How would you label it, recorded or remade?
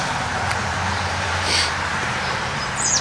remade